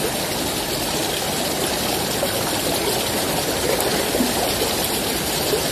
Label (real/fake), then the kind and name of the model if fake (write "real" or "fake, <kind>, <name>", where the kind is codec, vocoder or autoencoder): real